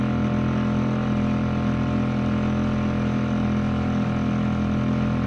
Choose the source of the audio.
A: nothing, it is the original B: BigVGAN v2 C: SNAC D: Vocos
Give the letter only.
A